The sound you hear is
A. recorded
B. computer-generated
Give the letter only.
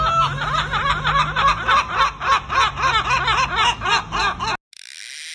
A